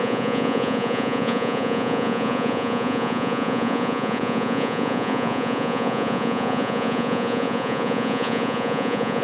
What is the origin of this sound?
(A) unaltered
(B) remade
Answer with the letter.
B